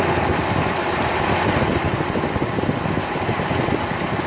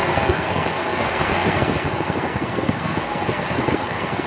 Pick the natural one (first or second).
first